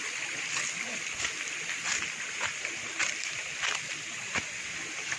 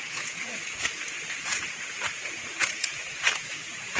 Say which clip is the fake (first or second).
second